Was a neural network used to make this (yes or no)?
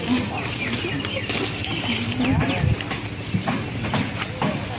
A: no